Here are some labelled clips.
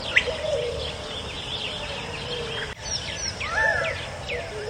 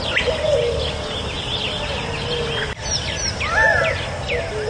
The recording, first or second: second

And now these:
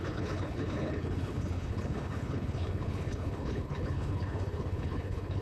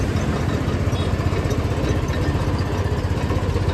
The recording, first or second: second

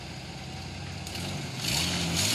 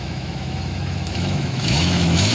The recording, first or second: first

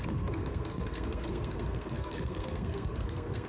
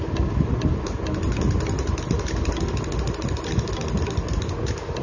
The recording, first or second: second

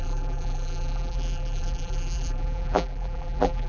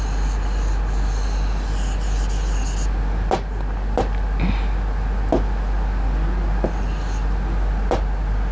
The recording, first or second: second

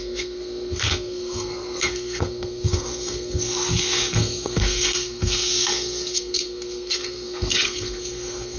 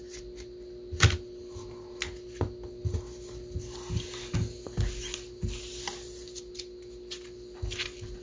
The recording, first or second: second